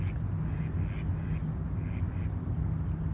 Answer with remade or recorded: recorded